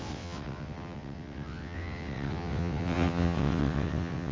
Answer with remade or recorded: remade